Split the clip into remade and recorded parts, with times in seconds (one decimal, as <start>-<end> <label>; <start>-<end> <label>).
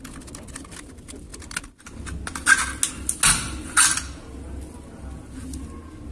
0.0-6.1 recorded